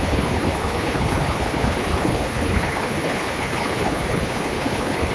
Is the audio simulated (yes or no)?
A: yes